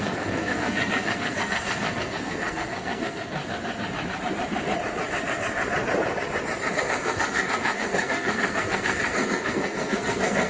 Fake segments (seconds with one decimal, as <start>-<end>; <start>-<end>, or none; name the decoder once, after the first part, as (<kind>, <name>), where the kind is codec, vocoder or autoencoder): 0.0-3.4 (codec, SNAC); 6.7-10.5